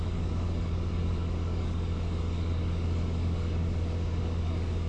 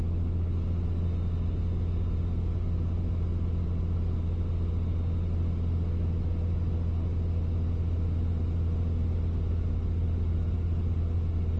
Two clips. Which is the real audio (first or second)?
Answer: second